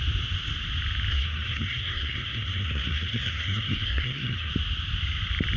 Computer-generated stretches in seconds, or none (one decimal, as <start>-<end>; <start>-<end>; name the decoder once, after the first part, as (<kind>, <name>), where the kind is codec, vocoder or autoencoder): 1.1-4.5 (codec, SNAC)